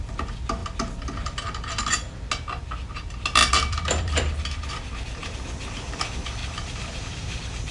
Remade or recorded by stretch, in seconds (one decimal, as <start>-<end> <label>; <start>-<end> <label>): 0.0-3.4 recorded; 3.4-4.7 remade; 4.7-5.2 recorded; 5.2-6.0 remade; 6.0-6.4 recorded; 6.4-7.0 remade; 7.0-7.7 recorded